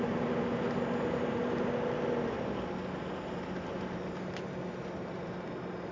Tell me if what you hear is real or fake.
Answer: real